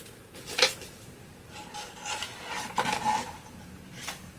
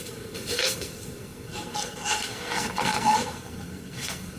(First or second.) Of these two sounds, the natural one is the first